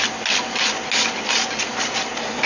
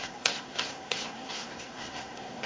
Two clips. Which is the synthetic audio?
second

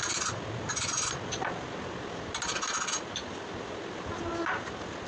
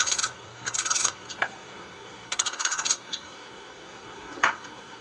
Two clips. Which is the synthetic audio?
second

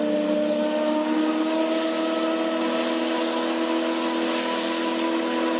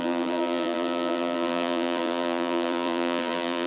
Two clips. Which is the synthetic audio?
second